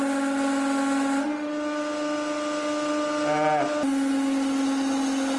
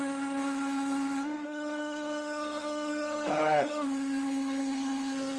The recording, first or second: first